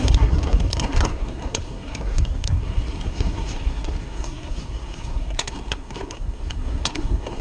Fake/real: fake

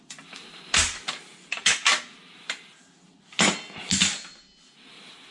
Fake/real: real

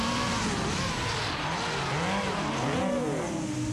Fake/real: real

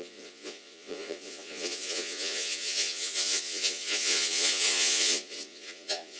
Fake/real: fake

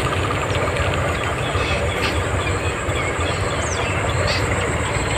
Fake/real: real